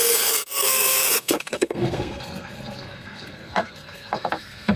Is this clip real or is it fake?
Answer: fake